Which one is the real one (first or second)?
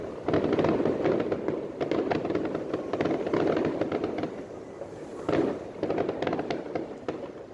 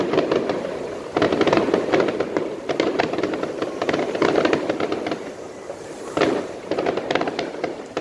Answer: first